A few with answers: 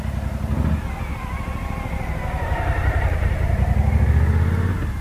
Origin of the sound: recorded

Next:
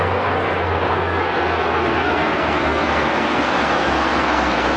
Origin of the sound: remade